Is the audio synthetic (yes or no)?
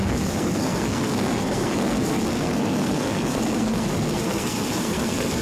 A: yes